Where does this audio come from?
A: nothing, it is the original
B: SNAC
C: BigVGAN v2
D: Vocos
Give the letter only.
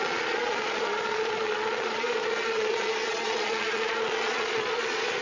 D